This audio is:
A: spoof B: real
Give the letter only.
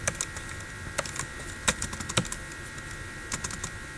B